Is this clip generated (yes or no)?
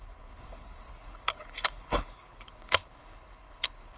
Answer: yes